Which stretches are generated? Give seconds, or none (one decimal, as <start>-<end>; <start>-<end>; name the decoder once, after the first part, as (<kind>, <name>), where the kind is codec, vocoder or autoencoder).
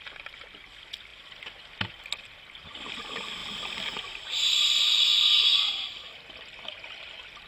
none